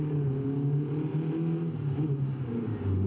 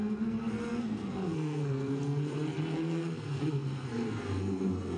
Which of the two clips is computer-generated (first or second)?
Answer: second